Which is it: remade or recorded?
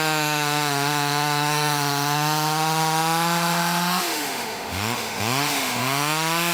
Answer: remade